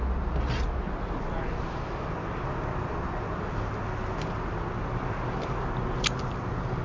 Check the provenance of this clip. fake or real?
real